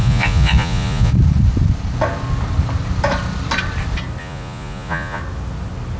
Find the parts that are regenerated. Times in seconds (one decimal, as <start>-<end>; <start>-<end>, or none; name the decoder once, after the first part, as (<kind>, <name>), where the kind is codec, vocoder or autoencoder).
0.0-1.1 (vocoder, Vocos); 4.2-5.2